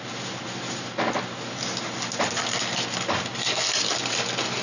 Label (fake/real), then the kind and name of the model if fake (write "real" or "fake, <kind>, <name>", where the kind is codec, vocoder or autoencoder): real